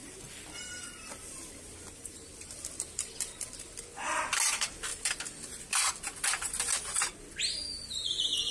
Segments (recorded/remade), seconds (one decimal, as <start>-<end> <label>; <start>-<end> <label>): 0.0-4.2 remade; 4.2-4.9 recorded; 4.9-5.9 remade; 5.9-8.5 recorded